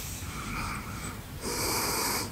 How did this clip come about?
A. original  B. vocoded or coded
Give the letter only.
B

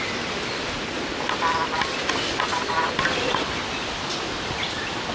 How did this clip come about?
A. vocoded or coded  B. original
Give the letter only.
B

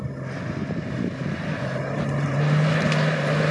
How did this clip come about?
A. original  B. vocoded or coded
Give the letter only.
A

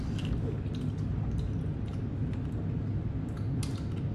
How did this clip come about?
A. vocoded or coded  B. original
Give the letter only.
B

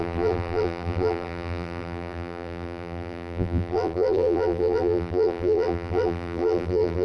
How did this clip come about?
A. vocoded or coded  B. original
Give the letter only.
A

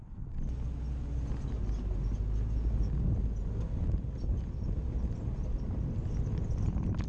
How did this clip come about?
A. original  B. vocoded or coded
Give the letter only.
A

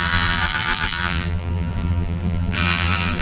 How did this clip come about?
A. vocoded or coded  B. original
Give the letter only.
A